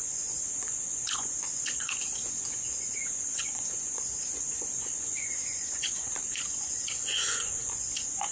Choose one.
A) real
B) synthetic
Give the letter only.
B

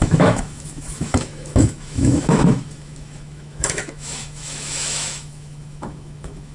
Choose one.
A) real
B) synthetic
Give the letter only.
B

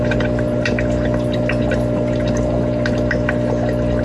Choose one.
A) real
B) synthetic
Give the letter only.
A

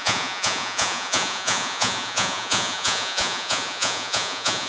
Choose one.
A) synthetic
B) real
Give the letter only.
A